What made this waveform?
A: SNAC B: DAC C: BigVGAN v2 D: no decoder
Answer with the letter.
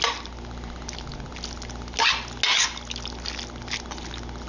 D